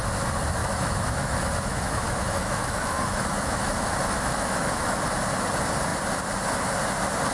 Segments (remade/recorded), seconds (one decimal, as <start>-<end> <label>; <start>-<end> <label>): 0.0-0.6 recorded; 0.6-5.0 remade; 5.0-7.3 recorded